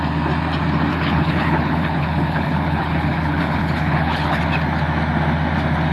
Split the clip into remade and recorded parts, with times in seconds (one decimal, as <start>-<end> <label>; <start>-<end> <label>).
0.0-0.9 recorded; 0.9-4.4 remade; 4.4-5.9 recorded